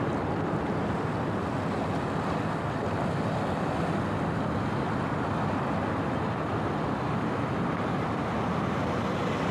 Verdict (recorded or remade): recorded